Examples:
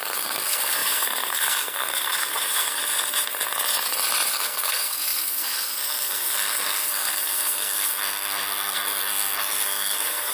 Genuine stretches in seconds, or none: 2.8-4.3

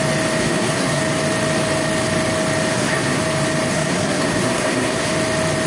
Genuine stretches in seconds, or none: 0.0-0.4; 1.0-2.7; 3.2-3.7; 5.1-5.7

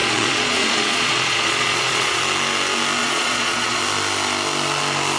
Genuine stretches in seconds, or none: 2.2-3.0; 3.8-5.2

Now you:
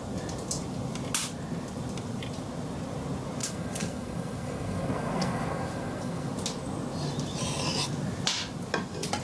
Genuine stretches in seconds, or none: 0.0-3.4; 6.3-9.2